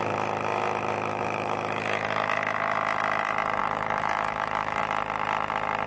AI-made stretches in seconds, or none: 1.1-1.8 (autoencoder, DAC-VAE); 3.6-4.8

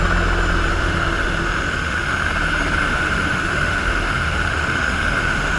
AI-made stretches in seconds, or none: 0.7-2.3 (autoencoder, DAC-VAE); 2.8-5.6

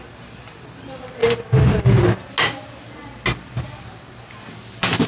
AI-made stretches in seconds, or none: none

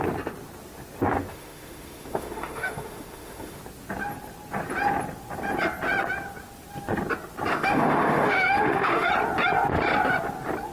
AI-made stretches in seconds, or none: 1.3-3.6 (autoencoder, DAC-VAE); 7.5-9.1

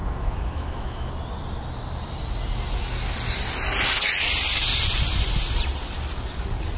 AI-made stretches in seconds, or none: 0.0-1.1 (autoencoder, DAC-VAE)

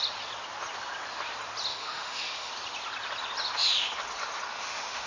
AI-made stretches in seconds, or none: 1.7-2.5 (autoencoder, DAC-VAE); 4.5-5.1

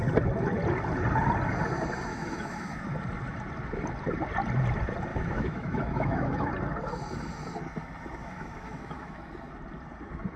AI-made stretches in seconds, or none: 2.1-2.8 (autoencoder, DAC-VAE); 5.1-6.5; 8.2-9.3

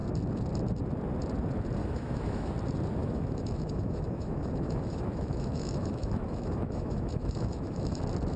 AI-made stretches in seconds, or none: 1.8-2.5 (autoencoder, DAC-VAE); 3.0-8.0